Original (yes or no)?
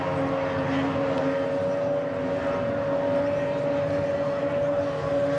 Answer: yes